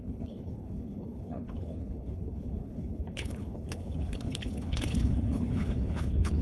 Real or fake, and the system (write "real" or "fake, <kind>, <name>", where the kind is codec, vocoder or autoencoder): fake, codec, HILCodec